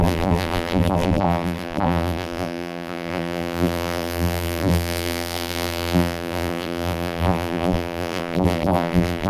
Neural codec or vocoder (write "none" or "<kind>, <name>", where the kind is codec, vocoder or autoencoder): vocoder, BigVGAN v2